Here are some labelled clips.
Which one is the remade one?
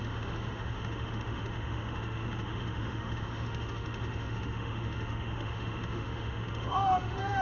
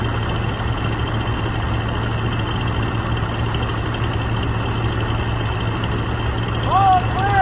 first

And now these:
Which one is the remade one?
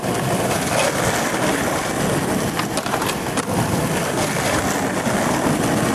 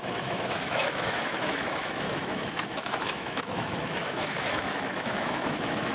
second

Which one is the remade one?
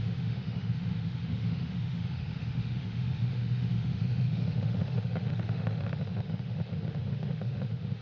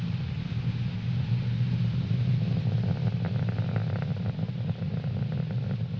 first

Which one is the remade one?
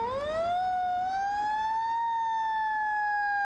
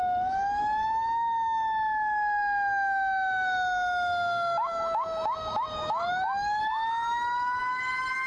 second